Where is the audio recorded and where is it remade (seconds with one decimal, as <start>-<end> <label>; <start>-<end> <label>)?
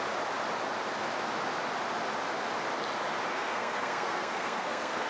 0.0-3.3 recorded; 3.3-5.1 remade